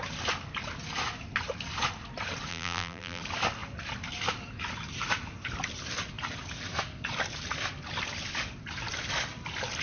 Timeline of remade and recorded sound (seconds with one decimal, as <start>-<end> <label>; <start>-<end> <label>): 0.0-2.5 recorded; 2.5-3.2 remade; 3.2-9.8 recorded